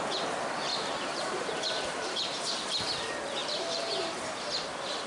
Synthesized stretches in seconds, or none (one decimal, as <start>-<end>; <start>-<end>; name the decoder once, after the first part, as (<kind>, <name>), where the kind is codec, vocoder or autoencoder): 0.7-2.7 (vocoder, BigVGAN v2); 3.4-4.3